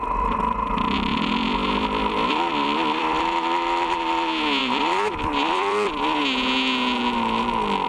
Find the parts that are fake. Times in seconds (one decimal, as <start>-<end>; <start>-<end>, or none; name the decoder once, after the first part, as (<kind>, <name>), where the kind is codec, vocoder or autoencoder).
1.1-3.2 (vocoder, BigVGAN v2); 4.6-6.2